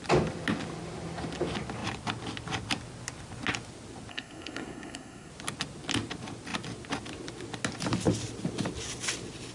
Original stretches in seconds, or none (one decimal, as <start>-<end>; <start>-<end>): 0.0-4.1; 5.3-9.5